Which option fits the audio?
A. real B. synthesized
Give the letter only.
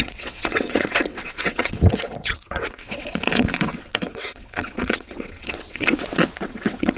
B